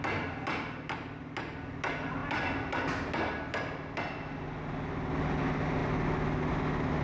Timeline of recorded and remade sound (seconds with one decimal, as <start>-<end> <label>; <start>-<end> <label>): 0.0-7.0 recorded